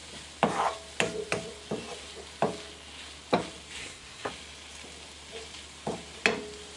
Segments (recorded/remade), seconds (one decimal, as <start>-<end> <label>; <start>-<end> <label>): 0.0-3.8 recorded; 3.8-4.3 remade; 4.3-6.8 recorded